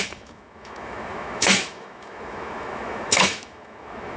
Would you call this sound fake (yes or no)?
yes